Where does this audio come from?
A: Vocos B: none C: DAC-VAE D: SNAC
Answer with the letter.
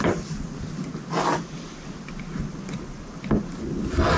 B